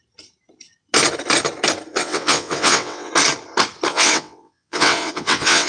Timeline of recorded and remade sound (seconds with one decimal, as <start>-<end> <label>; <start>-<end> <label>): 0.0-1.9 recorded; 1.9-3.1 remade; 3.1-3.9 recorded; 3.9-5.7 remade